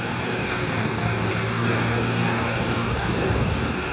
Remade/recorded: remade